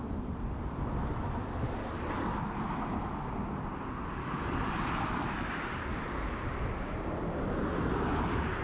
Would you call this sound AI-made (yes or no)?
no